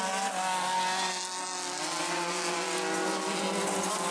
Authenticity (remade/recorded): recorded